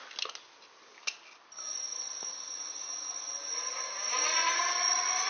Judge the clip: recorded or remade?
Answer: recorded